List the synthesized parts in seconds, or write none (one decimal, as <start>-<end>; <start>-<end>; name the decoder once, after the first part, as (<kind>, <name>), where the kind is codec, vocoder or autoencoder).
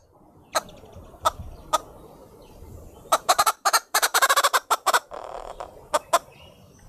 2.2-5.8 (vocoder, BigVGAN v2)